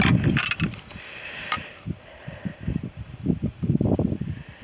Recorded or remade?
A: recorded